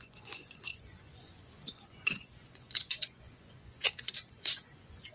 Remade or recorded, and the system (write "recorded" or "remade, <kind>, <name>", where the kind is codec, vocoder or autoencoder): remade, vocoder, Vocos